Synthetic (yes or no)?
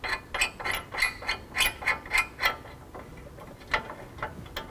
no